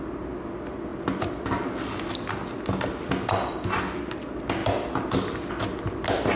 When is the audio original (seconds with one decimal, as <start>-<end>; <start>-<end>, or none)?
0.0-6.4